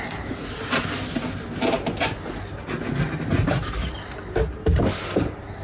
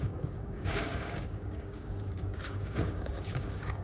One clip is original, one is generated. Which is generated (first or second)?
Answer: second